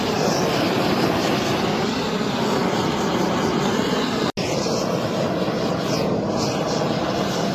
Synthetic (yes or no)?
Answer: no